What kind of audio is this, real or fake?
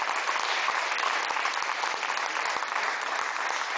real